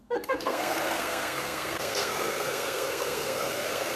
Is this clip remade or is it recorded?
remade